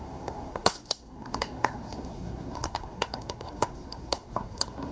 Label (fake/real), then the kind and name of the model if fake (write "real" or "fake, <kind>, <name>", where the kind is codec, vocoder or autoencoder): fake, codec, SNAC